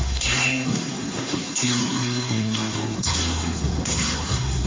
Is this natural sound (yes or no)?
no